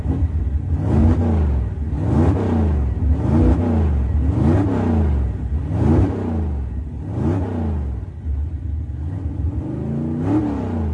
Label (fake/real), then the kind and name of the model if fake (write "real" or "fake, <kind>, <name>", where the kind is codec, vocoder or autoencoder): real